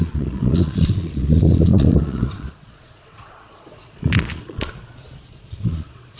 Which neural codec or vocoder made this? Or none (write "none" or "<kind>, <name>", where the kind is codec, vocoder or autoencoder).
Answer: vocoder, Vocos